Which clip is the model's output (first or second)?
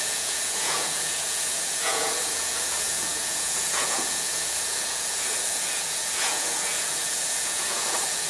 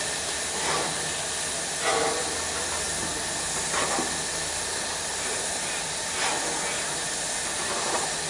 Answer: first